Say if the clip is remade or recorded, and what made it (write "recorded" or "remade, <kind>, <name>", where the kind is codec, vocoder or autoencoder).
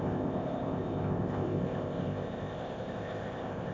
remade, codec, ZipCodec